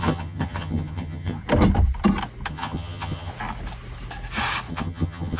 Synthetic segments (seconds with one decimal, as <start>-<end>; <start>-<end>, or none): 0.0-1.4; 2.5-3.3; 4.7-5.4